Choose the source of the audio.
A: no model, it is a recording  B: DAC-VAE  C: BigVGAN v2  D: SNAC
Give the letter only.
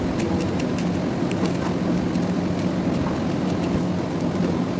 A